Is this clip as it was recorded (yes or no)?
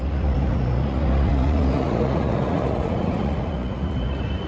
no